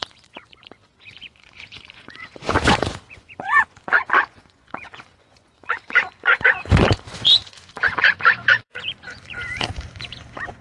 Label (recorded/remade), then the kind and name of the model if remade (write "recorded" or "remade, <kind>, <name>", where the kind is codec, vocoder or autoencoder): remade, vocoder, Vocos